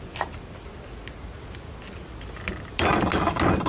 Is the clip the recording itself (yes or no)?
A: yes